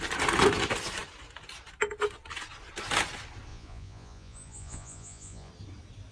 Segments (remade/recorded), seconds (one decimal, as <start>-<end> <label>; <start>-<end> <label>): 0.0-3.5 recorded; 3.5-5.5 remade; 5.5-6.1 recorded